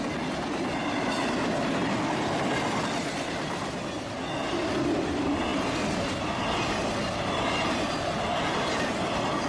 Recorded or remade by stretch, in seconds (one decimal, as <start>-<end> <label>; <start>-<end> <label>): 0.0-9.5 recorded